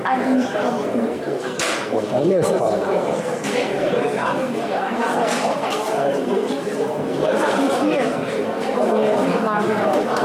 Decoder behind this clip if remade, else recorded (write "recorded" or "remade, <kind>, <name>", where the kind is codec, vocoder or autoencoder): remade, codec, SNAC